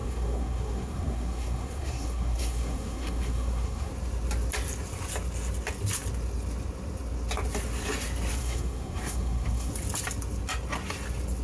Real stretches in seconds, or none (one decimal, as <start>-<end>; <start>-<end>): 3.9-8.4; 9.7-11.4